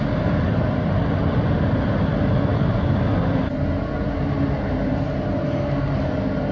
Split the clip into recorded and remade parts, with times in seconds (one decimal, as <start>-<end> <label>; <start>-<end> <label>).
0.0-6.5 recorded